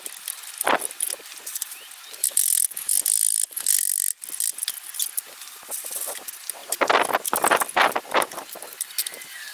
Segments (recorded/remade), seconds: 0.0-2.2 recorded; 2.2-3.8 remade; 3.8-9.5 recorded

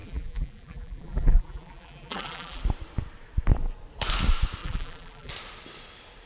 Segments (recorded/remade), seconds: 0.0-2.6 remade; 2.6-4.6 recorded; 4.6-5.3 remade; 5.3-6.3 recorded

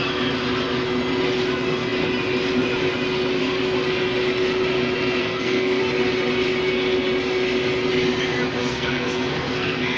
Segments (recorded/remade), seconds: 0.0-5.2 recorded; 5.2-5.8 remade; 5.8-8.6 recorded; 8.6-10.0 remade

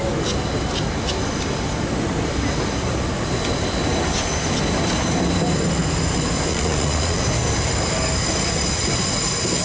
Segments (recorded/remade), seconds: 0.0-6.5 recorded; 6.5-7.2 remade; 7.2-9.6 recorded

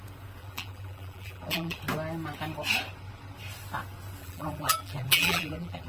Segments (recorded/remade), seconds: 0.0-0.4 recorded; 0.4-1.8 remade; 1.8-4.2 recorded; 4.2-5.9 remade

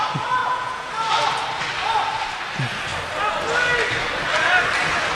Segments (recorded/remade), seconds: 0.0-0.4 recorded; 0.4-0.9 remade; 0.9-5.1 recorded